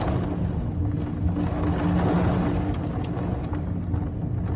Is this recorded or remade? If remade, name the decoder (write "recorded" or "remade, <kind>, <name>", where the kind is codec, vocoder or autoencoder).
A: recorded